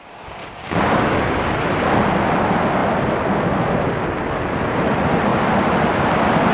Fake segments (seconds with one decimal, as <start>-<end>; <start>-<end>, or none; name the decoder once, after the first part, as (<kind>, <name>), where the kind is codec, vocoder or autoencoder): 0.4-1.5 (codec, DAC)